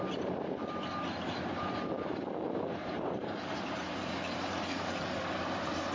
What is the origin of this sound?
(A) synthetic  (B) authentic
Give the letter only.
A